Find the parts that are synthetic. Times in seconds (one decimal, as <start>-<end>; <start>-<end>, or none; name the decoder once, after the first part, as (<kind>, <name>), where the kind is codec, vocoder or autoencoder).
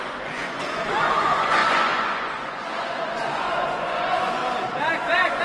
0.0-4.4 (vocoder, Vocos)